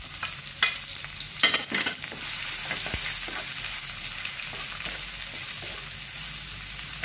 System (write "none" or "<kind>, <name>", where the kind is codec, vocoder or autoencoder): none